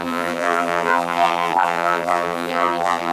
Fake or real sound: fake